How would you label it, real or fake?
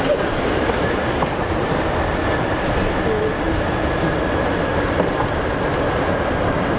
real